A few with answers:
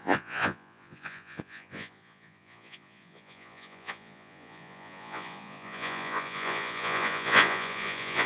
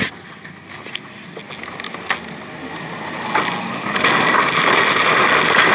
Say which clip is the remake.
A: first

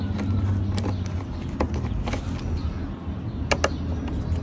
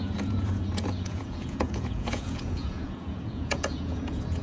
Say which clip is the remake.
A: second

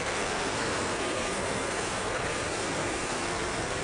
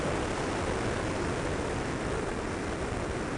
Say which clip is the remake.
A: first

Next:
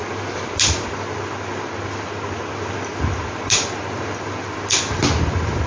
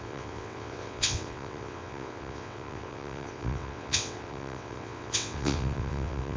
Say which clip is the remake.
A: second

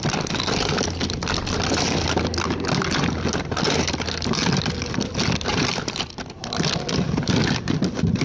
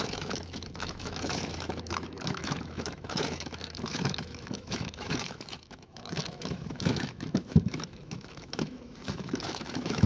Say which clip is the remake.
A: second